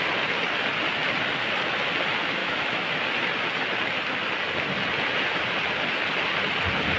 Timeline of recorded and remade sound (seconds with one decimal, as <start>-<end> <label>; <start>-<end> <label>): 0.0-2.4 recorded; 2.4-3.0 remade; 3.0-7.0 recorded